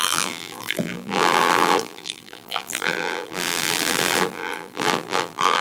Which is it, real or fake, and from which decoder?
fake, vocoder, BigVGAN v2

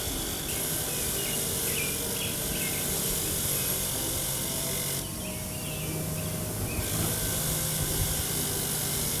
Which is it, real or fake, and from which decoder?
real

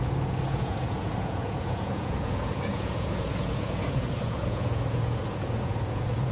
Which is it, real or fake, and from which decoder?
fake, vocoder, Vocos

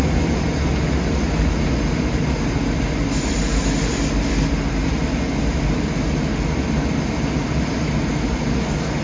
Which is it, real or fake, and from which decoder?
real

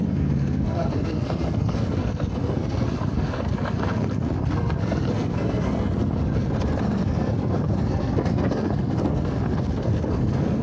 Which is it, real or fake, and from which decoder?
fake, codec, SNAC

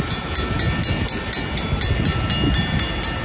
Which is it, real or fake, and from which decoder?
real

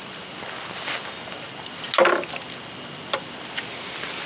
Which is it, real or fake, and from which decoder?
real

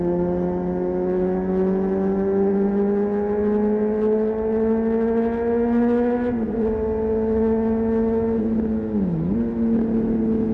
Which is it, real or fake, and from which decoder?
real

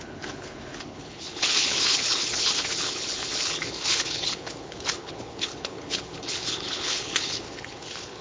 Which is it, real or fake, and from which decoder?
fake, codec, HILCodec